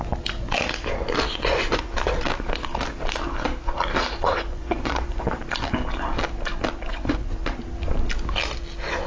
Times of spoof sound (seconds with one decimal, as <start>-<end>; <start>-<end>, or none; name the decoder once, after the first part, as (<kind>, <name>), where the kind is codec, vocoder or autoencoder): 1.3-1.9 (vocoder, Vocos); 4.5-5.4; 6.9-7.5